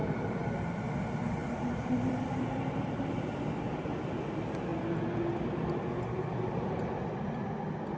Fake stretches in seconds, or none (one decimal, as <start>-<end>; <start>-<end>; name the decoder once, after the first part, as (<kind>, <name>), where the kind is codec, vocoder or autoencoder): 0.0-0.7 (vocoder, BigVGAN v2); 1.4-3.4